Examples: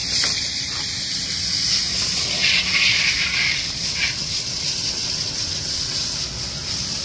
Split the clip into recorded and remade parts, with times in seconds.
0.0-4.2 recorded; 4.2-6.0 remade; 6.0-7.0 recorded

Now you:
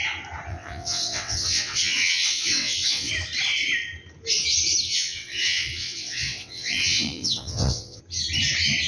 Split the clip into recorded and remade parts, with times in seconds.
0.0-0.5 recorded; 0.5-3.1 remade; 3.1-4.8 recorded; 4.8-8.0 remade; 8.0-8.9 recorded

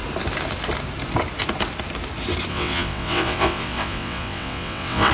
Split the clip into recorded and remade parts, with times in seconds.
0.0-2.5 recorded; 2.5-5.1 remade

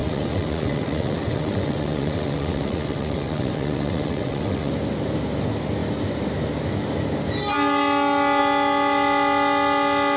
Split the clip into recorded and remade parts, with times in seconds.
0.0-4.7 remade; 4.7-10.2 recorded